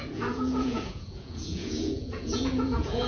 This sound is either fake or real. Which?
fake